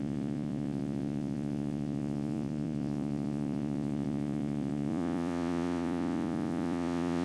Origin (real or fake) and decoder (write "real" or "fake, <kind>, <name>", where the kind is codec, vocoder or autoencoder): fake, vocoder, Vocos